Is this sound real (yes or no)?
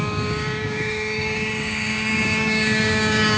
no